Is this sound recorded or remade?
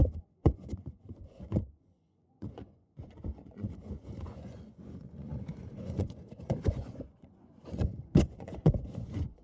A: remade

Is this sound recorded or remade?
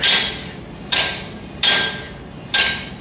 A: remade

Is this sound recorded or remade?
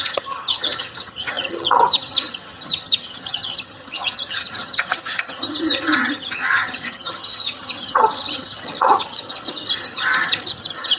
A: remade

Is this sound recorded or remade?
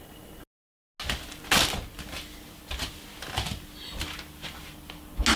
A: recorded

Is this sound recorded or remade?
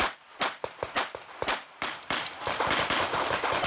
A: recorded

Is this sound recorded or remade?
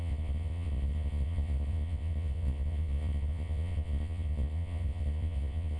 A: remade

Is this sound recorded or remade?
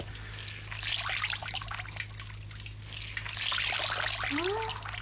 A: recorded